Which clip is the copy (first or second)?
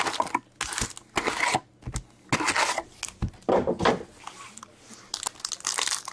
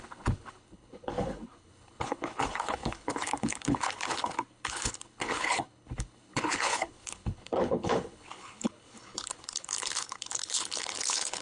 second